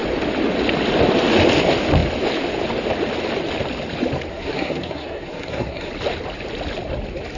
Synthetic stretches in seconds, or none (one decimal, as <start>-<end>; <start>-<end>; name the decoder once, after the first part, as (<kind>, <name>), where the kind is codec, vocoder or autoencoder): 4.3-5.9 (codec, SNAC)